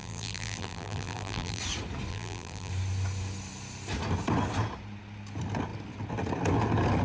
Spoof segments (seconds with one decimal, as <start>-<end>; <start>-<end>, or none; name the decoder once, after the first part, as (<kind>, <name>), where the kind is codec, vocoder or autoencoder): 0.0-1.6 (vocoder, BigVGAN v2); 2.1-2.7